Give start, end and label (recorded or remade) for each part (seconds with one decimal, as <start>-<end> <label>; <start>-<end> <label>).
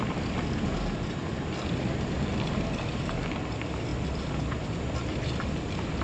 0.0-3.9 remade; 3.9-5.2 recorded; 5.2-6.0 remade